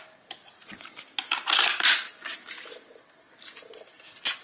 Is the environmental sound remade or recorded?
recorded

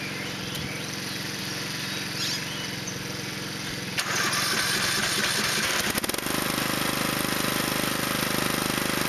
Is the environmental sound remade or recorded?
recorded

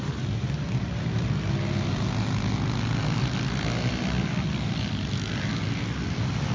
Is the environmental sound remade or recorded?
recorded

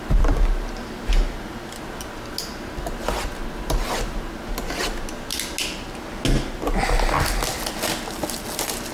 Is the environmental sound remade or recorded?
recorded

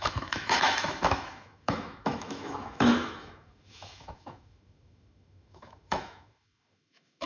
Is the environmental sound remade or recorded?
remade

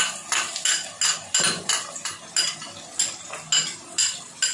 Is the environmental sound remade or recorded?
recorded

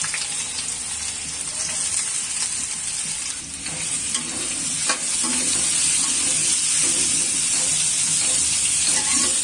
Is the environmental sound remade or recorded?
recorded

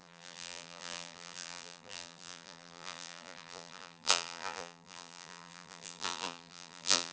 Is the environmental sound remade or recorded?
remade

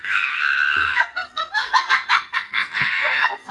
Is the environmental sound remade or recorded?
remade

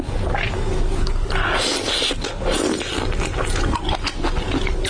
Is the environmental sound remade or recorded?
recorded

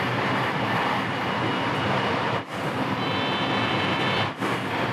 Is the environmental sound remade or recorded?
remade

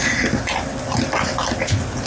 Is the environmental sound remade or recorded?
recorded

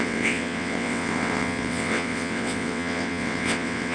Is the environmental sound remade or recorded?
remade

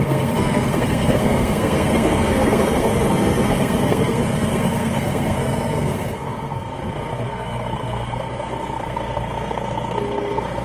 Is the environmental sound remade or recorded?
remade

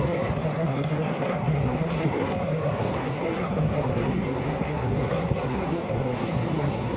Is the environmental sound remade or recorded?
remade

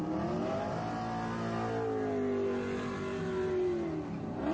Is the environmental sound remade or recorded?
recorded